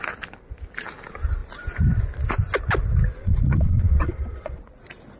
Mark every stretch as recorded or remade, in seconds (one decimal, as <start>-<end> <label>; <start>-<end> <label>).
0.0-3.2 recorded; 3.2-4.6 remade; 4.6-5.2 recorded